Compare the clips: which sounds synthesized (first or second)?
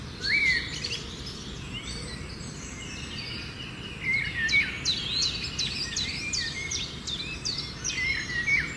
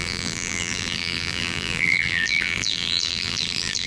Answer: second